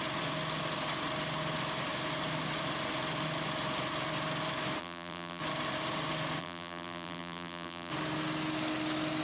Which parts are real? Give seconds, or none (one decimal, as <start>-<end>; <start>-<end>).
0.0-4.8; 5.4-6.4; 7.9-9.2